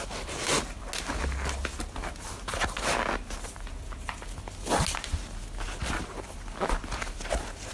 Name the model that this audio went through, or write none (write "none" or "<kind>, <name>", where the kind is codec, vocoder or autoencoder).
none